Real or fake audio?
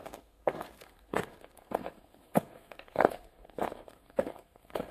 fake